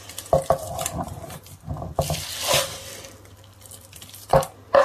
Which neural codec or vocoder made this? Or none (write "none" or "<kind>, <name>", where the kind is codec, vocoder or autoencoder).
vocoder, BigVGAN v2